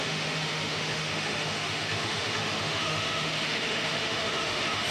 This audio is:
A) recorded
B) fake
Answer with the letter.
B